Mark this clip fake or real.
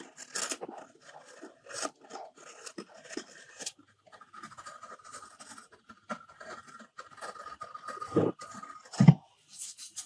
real